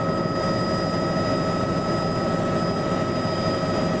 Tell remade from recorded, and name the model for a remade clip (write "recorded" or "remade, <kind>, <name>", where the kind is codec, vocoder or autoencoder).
recorded